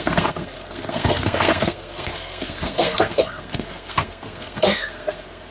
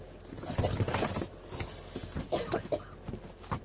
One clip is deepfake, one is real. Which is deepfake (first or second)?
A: first